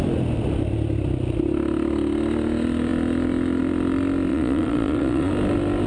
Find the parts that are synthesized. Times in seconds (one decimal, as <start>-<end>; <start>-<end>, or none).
4.3-5.3